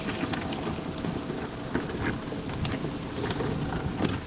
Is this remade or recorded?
recorded